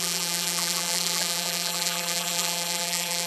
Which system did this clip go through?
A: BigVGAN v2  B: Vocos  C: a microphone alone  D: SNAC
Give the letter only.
A